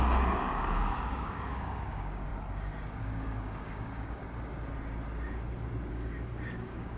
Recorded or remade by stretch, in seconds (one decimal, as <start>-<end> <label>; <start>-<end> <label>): 0.0-2.3 remade; 2.3-3.0 recorded; 3.0-4.2 remade; 4.2-5.9 recorded; 5.9-7.0 remade

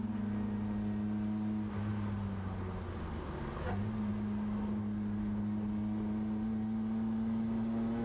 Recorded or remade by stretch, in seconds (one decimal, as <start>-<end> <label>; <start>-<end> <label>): 0.0-8.0 recorded

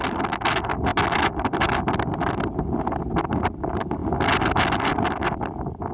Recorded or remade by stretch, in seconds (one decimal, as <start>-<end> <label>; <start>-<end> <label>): 0.0-5.9 recorded

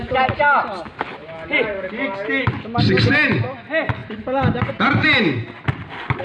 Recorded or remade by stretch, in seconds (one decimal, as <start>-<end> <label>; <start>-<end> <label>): 0.0-6.2 recorded